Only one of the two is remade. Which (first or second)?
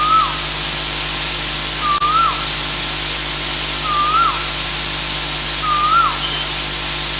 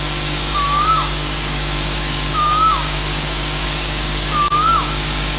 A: second